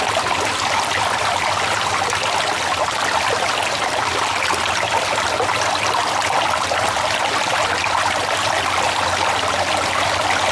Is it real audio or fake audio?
real